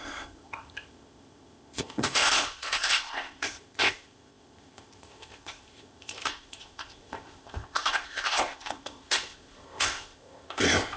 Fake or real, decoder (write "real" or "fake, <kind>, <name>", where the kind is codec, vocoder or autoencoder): fake, codec, ZipCodec